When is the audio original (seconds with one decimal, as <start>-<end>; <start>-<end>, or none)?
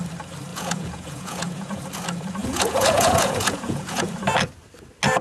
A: 0.0-0.5; 1.8-2.4; 4.1-5.2